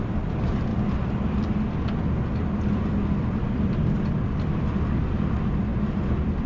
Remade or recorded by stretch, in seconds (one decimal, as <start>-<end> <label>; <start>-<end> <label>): 0.0-5.7 remade; 5.7-6.5 recorded